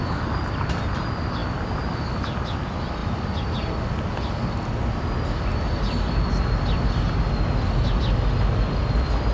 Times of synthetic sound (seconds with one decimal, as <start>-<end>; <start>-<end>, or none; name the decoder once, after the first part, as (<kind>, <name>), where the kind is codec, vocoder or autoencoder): none